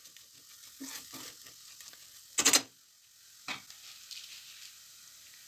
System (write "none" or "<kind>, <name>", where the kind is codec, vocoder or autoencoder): none